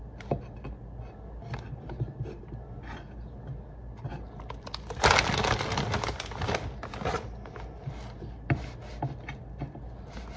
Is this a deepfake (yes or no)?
no